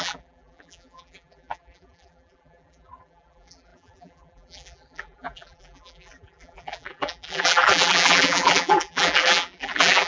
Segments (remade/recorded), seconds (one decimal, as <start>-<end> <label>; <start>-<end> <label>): 0.0-10.1 remade